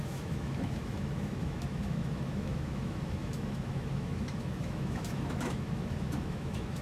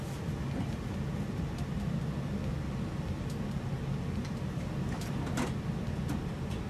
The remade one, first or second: first